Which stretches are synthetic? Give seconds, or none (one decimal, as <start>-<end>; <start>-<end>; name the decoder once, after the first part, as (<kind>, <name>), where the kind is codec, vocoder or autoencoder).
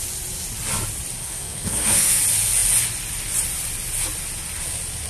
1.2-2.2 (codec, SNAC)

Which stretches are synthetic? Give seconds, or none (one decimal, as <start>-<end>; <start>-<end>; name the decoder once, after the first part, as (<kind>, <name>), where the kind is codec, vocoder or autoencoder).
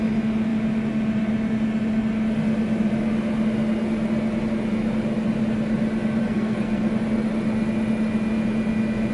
6.2-6.9 (codec, SNAC)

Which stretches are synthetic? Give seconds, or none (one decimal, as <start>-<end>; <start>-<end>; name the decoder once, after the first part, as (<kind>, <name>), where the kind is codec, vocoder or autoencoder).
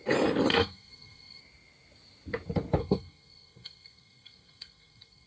0.5-1.4 (codec, SNAC); 2.8-5.3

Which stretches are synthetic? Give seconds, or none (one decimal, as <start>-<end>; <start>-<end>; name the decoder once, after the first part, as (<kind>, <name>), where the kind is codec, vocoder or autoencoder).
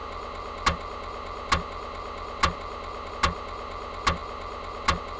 none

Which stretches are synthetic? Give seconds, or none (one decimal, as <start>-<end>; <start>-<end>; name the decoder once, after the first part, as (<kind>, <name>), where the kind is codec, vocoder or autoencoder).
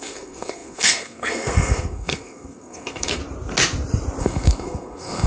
0.0-3.2 (codec, SNAC); 4.2-5.3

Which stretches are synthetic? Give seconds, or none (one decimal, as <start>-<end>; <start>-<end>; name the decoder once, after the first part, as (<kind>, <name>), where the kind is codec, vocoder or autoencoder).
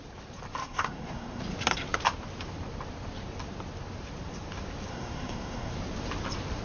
0.6-1.4 (codec, SNAC); 4.9-5.7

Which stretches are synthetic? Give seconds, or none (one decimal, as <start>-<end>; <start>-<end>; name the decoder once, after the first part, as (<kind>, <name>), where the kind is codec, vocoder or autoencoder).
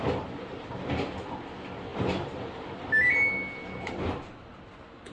none